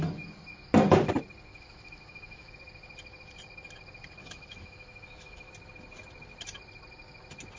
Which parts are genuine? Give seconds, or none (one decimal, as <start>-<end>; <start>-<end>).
0.0-1.5; 2.5-4.2; 5.5-7.6